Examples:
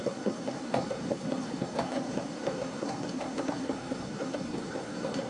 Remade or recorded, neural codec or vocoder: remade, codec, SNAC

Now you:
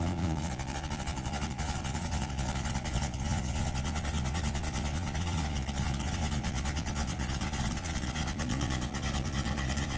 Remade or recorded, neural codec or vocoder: remade, vocoder, Vocos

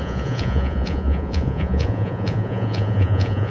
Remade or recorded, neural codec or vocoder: remade, vocoder, Vocos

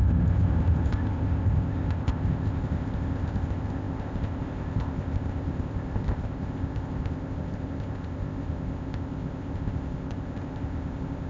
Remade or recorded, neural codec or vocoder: remade, codec, ZipCodec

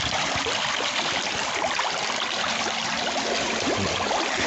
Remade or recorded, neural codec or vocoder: recorded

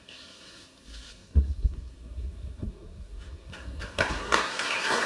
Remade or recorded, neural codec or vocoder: remade, codec, SNAC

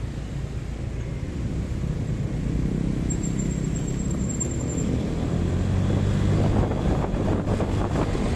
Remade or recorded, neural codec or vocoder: recorded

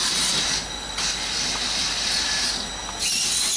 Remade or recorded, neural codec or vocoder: recorded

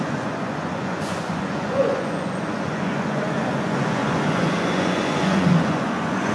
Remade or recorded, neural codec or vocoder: remade, vocoder, Vocos